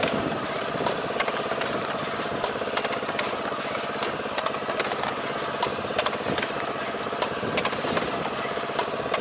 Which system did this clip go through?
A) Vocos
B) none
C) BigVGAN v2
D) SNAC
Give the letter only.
B